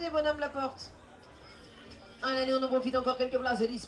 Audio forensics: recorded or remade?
remade